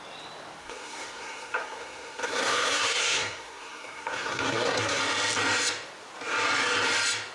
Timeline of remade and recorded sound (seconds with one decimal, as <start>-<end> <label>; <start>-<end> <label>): 0.0-0.6 recorded; 0.6-5.0 remade; 5.0-7.3 recorded